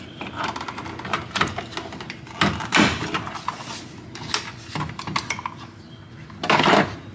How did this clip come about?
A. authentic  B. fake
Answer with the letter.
A